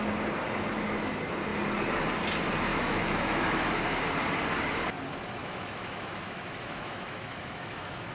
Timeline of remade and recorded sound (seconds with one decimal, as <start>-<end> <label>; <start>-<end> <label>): 0.0-2.7 recorded; 2.7-3.8 remade; 3.8-5.4 recorded; 5.4-8.1 remade